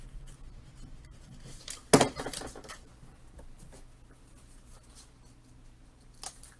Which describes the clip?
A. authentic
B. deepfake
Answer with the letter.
A